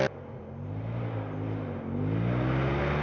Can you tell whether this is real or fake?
real